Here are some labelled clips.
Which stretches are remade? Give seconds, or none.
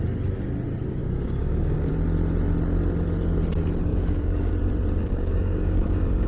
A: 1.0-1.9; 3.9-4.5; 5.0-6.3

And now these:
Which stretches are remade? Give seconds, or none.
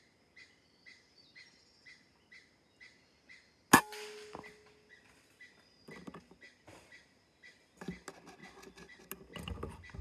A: none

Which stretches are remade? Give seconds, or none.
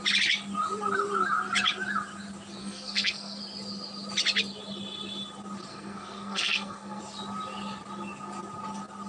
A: 2.6-3.4; 5.7-7.0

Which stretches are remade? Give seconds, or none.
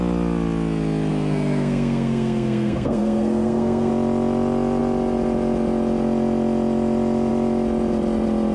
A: 1.1-3.9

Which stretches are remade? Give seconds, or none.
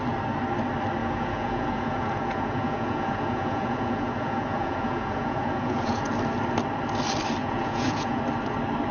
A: 1.0-6.1; 7.4-8.2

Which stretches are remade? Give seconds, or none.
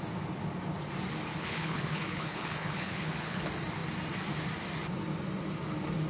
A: 1.3-3.4